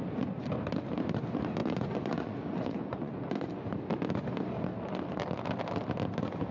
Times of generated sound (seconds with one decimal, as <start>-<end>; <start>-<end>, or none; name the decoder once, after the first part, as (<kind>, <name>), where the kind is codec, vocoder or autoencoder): 1.6-3.5 (vocoder, Vocos)